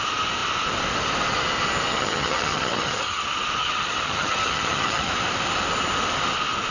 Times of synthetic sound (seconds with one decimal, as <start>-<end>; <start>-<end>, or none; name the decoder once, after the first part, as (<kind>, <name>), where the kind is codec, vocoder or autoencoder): 1.9-3.2 (vocoder, HiFi-GAN); 3.6-5.1